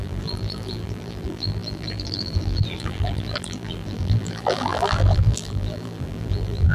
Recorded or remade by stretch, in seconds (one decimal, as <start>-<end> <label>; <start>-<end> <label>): 0.0-6.7 remade